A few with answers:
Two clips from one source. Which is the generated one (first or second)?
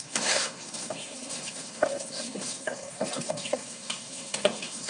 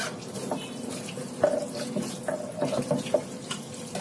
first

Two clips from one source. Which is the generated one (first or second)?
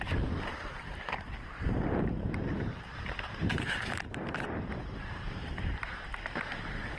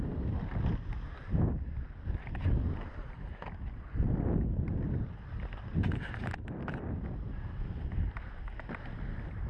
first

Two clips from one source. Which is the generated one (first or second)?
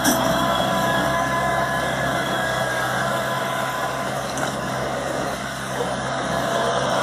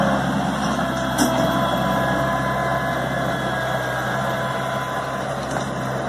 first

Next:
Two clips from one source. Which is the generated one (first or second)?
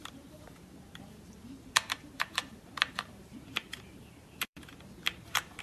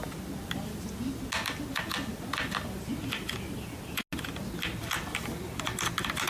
first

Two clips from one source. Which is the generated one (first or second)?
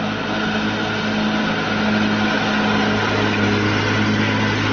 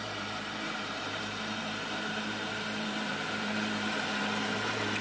second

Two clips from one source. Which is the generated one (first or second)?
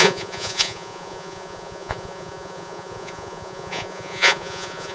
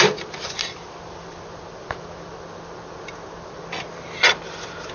first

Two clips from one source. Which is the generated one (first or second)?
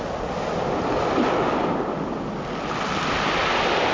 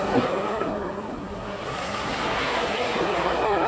second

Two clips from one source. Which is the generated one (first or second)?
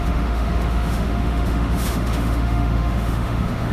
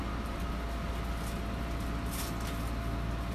first